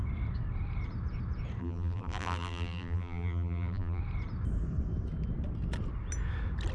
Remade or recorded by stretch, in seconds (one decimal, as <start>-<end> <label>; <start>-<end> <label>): 0.0-1.6 recorded; 1.6-4.0 remade; 4.0-6.7 recorded